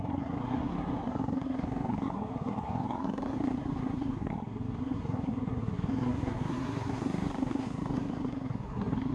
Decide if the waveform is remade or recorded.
remade